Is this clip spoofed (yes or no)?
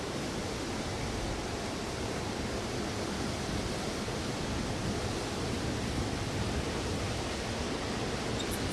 no